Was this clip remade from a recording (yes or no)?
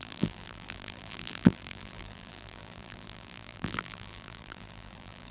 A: yes